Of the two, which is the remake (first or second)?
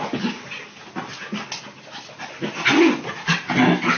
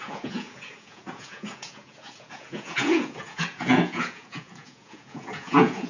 second